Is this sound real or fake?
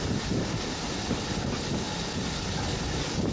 real